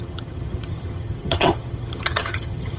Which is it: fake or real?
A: fake